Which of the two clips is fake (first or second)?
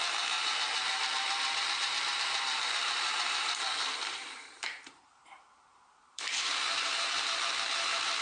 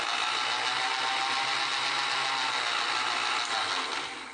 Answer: first